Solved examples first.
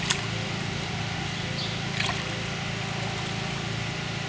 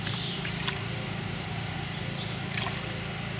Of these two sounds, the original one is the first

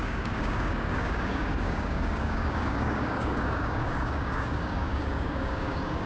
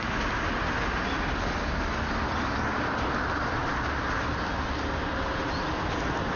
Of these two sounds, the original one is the second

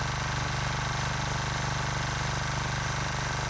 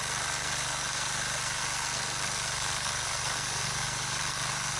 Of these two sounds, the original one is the first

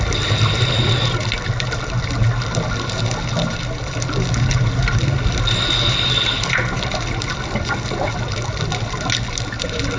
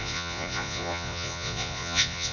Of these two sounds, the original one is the first